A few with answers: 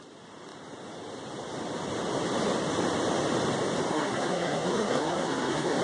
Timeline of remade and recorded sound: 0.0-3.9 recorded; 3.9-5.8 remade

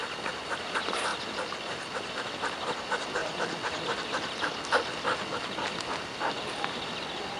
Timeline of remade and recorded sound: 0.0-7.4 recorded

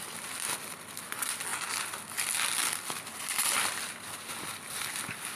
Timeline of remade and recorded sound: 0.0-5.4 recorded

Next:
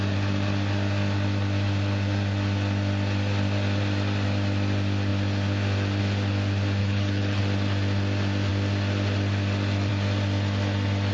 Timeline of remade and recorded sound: 0.0-6.8 recorded; 6.8-7.4 remade; 7.4-11.1 recorded

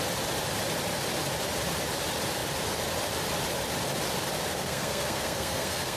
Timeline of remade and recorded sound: 0.0-4.5 recorded; 4.5-6.0 remade